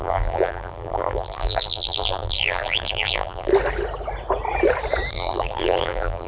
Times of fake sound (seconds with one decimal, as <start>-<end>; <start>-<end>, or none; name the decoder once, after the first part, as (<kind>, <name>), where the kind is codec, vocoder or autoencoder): 0.0-3.5 (vocoder, BigVGAN v2); 5.1-6.3